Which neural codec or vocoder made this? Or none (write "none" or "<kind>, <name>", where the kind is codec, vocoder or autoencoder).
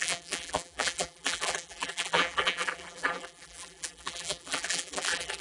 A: vocoder, BigVGAN v2